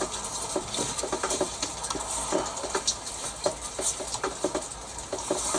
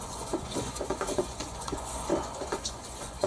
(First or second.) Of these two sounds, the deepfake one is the second